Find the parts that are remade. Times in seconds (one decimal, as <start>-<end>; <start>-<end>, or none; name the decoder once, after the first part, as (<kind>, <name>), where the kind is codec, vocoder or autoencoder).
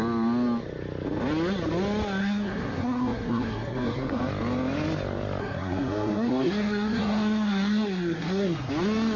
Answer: 2.2-4.2 (codec, SNAC); 5.4-8.7